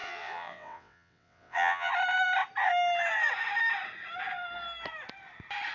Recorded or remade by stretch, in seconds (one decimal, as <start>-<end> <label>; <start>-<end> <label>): 0.0-1.9 remade; 1.9-5.7 recorded